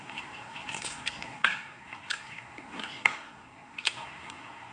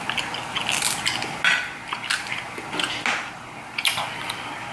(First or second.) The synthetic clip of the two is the first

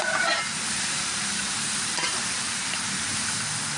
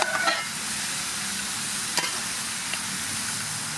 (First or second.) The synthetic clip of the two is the first